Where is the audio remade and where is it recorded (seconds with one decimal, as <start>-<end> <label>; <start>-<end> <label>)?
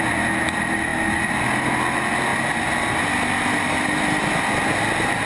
0.0-5.3 recorded